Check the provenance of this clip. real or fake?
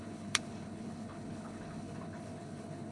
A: fake